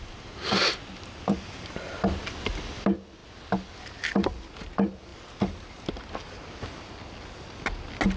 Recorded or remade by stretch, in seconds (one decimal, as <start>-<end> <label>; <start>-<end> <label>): 0.0-8.2 recorded